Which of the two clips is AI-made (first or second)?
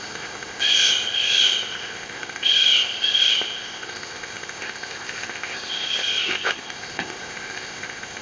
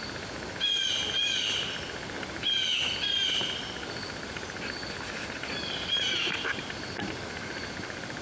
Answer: first